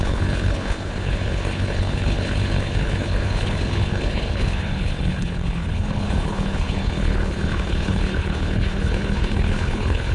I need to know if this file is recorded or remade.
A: remade